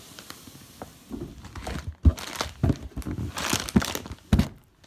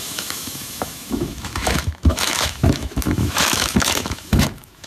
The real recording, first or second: first